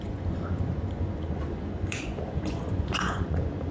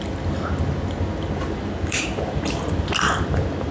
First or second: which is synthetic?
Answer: first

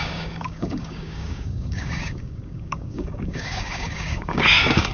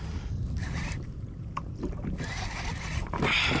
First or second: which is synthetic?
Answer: first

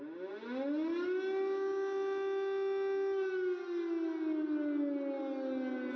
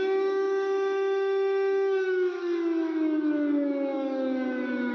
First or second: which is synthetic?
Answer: second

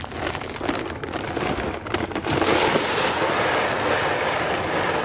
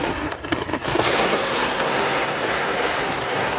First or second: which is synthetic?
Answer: second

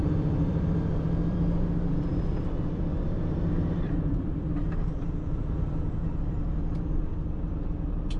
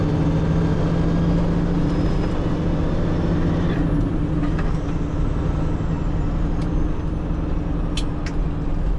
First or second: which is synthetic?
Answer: first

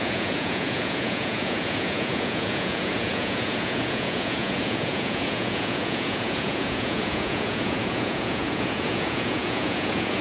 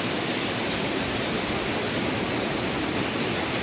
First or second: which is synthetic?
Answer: first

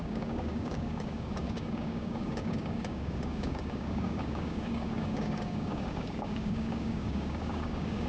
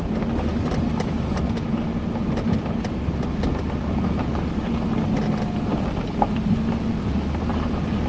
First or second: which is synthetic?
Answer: first